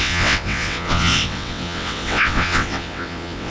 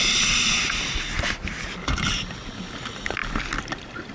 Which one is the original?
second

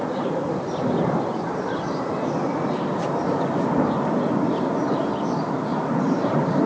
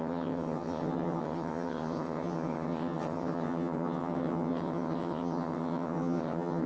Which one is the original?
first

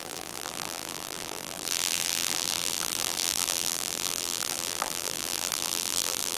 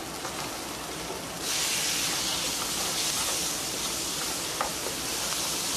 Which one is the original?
second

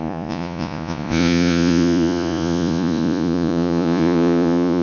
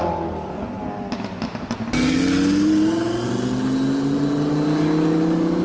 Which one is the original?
second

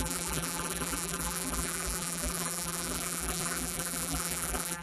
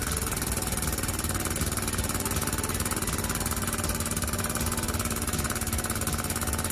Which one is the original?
second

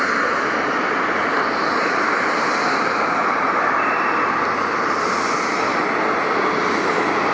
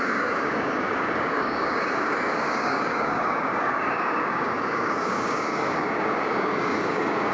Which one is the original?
first